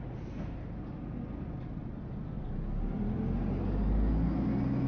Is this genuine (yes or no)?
yes